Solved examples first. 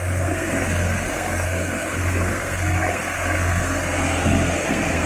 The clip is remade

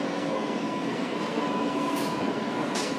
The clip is remade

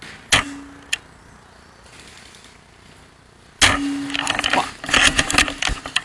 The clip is recorded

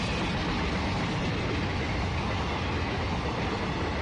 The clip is recorded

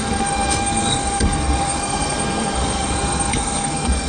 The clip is remade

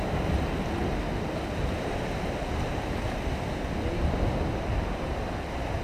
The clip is recorded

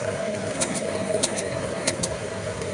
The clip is remade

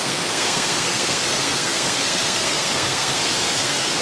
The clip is remade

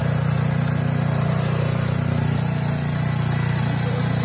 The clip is recorded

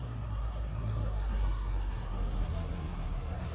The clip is remade